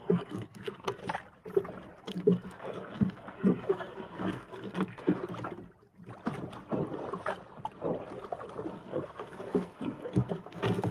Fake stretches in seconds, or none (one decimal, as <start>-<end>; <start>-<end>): 0.0-1.0; 2.0-5.2; 8.7-10.9